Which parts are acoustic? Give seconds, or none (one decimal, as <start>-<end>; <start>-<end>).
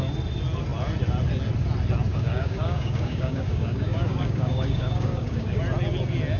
0.0-2.1; 5.6-6.4